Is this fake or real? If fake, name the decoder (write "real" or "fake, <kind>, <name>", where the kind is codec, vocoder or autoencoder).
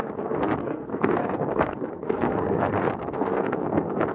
fake, codec, SNAC